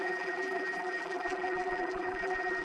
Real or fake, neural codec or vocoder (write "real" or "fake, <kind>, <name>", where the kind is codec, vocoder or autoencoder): fake, vocoder, BigVGAN v2